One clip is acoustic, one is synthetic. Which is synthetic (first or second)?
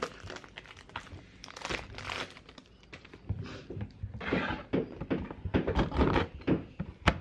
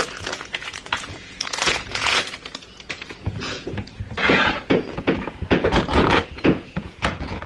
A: second